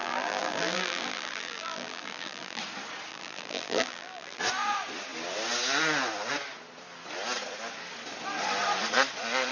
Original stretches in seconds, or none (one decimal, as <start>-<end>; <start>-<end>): 2.6-3.1; 4.4-9.5